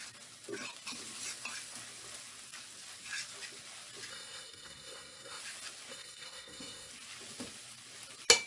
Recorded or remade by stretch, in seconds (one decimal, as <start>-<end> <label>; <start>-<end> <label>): 0.0-4.1 recorded; 4.1-5.4 remade; 5.4-5.9 recorded; 5.9-6.9 remade; 6.9-8.5 recorded